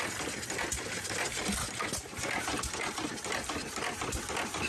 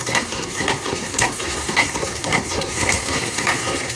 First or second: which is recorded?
first